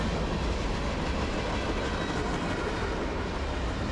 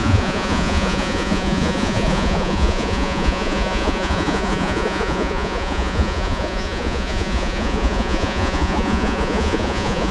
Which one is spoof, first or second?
second